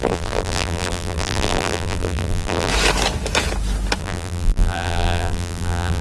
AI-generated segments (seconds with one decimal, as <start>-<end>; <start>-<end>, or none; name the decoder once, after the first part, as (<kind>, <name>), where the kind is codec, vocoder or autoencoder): 0.0-2.7 (vocoder, BigVGAN v2); 4.0-6.0